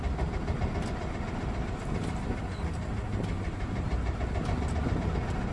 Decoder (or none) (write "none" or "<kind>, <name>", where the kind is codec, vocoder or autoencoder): none